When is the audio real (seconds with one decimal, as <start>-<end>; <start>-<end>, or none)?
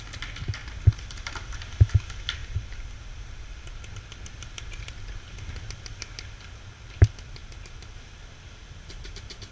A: 0.0-2.4; 3.9-9.5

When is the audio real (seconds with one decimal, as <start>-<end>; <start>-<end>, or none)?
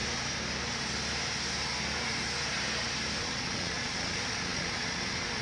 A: 0.0-3.2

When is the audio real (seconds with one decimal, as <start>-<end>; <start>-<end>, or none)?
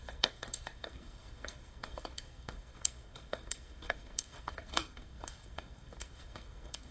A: none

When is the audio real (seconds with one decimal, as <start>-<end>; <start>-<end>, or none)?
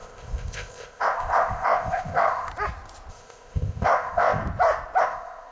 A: 2.5-3.1; 4.4-5.0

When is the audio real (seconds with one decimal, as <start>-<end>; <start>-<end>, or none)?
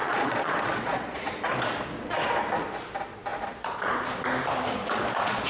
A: 1.3-3.3; 4.0-4.8